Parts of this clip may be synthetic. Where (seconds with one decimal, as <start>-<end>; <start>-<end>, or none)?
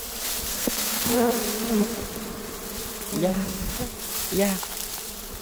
0.5-1.3; 3.3-3.8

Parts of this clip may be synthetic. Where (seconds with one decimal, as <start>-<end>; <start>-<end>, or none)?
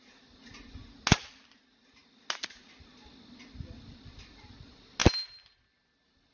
none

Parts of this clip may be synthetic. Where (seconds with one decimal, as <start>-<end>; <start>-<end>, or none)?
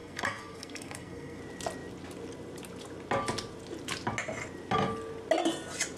0.0-1.4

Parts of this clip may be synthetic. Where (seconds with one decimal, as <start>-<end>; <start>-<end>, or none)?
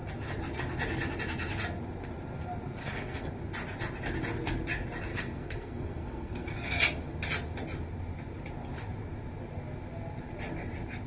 2.8-3.3; 5.1-6.8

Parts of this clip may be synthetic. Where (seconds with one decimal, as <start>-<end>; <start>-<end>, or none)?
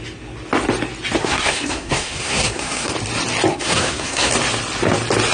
1.2-2.9; 3.5-4.3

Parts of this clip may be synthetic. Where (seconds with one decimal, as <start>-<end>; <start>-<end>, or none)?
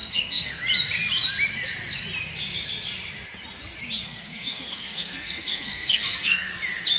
0.0-0.6; 4.0-6.5